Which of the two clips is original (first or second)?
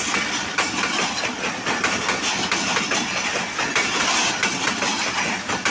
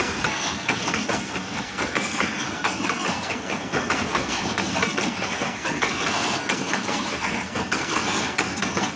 first